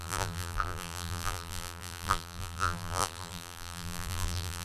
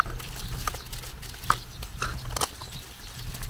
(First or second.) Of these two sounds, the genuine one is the second